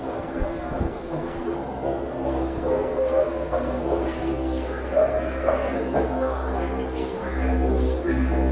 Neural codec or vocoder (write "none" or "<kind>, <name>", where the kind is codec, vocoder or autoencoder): codec, SNAC